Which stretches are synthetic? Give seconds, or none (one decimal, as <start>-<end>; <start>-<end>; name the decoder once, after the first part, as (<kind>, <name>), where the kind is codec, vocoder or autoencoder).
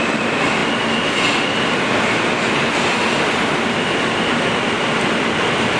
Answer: none